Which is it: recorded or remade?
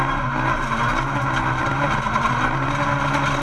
recorded